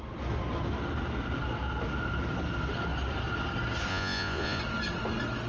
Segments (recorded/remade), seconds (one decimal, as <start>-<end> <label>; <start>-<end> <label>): 0.0-3.9 recorded; 3.9-4.6 remade; 4.6-5.5 recorded